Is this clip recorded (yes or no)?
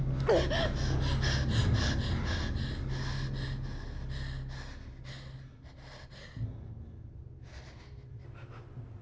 yes